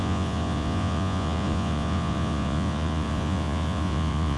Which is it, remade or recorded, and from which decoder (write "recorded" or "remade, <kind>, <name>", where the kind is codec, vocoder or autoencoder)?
remade, vocoder, Vocos